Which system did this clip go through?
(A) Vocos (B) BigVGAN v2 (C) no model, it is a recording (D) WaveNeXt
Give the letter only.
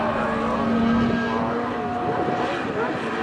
C